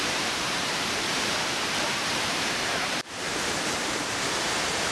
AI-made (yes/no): yes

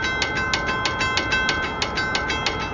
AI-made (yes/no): no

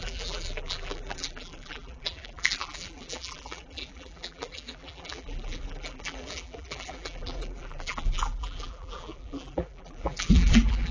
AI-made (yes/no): yes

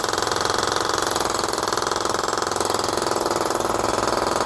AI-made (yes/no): no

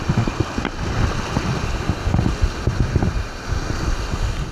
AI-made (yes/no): no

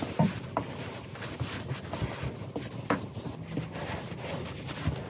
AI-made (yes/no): no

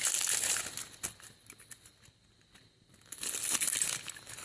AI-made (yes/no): no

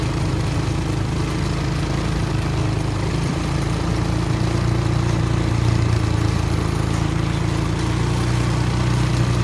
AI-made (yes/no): no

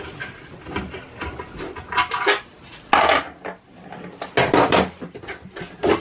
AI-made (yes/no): no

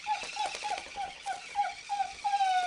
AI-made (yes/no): no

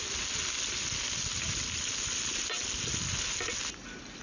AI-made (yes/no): no